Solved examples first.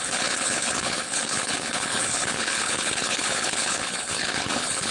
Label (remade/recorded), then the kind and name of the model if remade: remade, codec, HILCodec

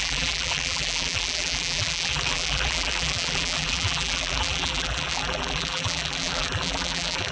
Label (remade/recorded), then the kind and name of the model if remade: remade, vocoder, BigVGAN v2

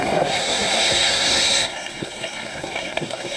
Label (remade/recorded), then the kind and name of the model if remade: remade, codec, SNAC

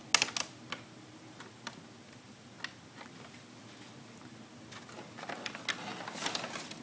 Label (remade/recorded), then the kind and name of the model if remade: recorded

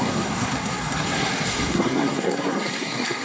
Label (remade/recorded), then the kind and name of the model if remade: remade, codec, SNAC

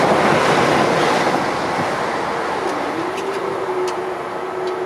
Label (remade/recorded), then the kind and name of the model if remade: recorded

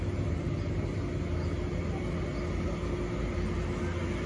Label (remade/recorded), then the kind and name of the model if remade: recorded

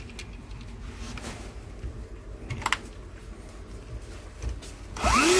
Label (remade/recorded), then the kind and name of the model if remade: recorded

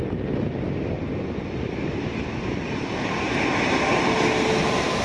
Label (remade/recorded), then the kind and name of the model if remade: recorded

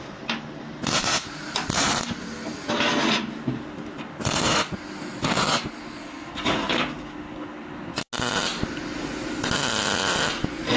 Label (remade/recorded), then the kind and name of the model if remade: recorded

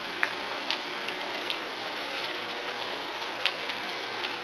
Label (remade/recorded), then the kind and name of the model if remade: remade, codec, SNAC